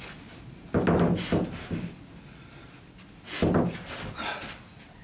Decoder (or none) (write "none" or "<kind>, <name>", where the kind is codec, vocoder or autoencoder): none